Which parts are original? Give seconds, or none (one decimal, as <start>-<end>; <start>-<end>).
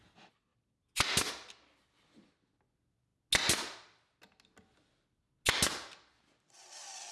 0.0-7.1